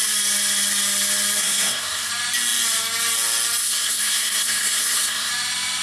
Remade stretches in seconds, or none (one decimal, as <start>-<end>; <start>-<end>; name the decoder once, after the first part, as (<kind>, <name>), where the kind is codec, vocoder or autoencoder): 1.4-2.1 (codec, SNAC); 3.6-5.3